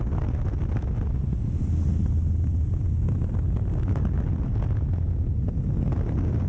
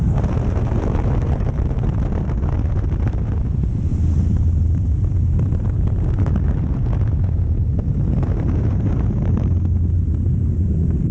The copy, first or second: second